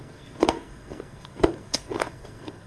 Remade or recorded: remade